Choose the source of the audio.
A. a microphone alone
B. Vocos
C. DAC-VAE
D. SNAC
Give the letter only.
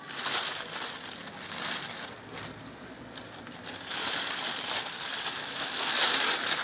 A